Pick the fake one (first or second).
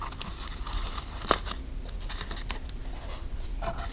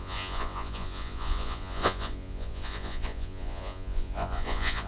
second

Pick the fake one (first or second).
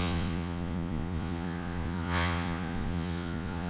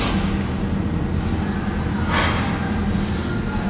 first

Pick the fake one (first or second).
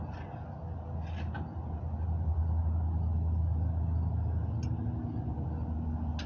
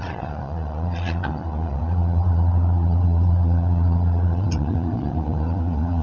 second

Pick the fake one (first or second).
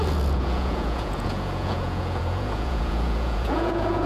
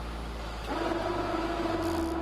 first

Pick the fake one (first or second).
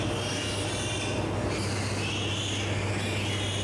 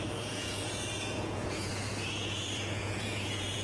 second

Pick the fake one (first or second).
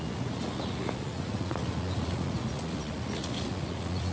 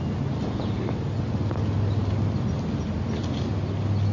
first